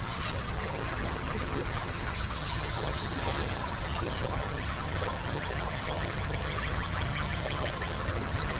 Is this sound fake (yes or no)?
yes